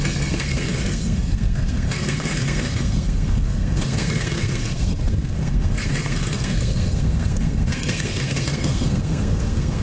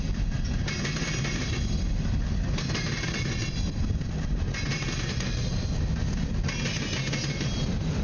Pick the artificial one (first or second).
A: first